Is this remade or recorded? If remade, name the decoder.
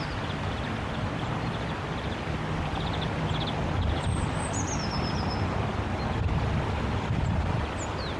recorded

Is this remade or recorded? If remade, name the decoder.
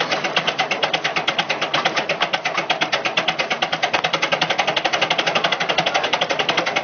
recorded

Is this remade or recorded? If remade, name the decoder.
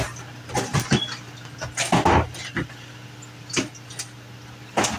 recorded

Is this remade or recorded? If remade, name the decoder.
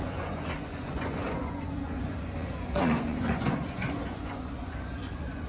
remade, vocoder, Vocos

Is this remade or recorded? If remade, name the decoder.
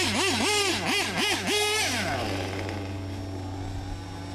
recorded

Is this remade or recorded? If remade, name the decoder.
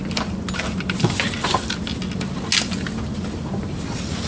recorded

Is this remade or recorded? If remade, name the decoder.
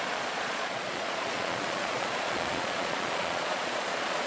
remade, vocoder, Vocos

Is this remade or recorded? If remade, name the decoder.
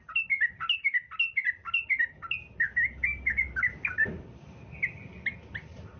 recorded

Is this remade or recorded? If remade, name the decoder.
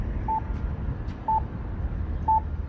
recorded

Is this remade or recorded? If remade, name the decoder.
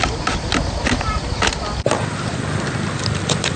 recorded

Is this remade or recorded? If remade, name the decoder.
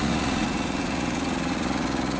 remade, vocoder, Vocos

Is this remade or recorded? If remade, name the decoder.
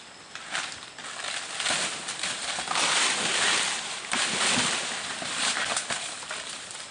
recorded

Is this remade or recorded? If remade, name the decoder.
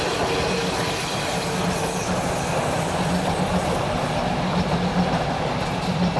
recorded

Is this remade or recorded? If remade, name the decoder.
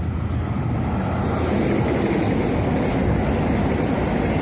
recorded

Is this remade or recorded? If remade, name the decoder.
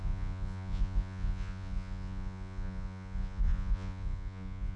remade, vocoder, Vocos